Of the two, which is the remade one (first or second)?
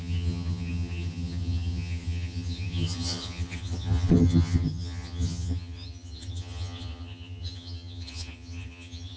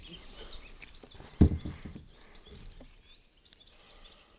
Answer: first